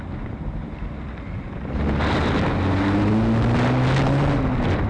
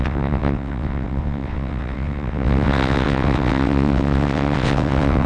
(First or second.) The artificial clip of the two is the second